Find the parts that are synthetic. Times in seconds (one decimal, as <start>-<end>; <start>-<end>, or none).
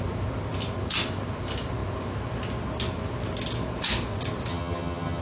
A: 4.5-5.2